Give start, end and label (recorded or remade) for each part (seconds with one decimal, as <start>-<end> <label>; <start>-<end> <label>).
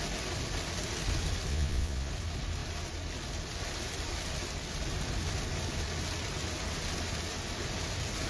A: 0.0-1.5 recorded; 1.5-2.1 remade; 2.1-8.3 recorded